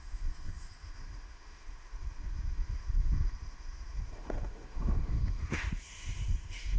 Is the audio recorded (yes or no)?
no